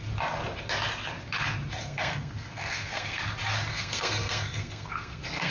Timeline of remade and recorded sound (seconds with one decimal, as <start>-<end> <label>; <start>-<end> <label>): 0.0-1.8 recorded; 1.8-3.2 remade; 3.2-3.7 recorded; 3.7-5.5 remade

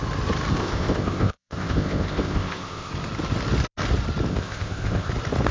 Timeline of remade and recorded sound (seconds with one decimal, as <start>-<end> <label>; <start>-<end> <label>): 0.0-0.6 recorded; 0.6-2.9 remade; 2.9-4.3 recorded; 4.3-5.1 remade; 5.1-5.5 recorded

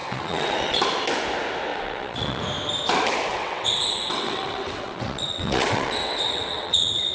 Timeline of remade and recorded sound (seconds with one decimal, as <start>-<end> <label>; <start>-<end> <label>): 0.0-0.8 remade; 0.8-1.7 recorded; 1.7-2.4 remade; 2.4-3.3 recorded; 3.3-7.1 remade

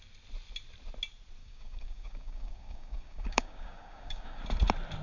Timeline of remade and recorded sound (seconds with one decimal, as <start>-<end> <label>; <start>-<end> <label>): 0.0-1.4 recorded; 1.4-4.4 remade; 4.4-5.0 recorded

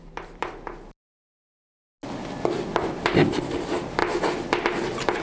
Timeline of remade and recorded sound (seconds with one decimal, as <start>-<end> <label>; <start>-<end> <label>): 0.0-1.2 remade; 1.2-2.8 recorded; 2.8-5.2 remade